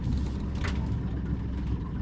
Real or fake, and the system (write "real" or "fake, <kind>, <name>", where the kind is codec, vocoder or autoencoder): real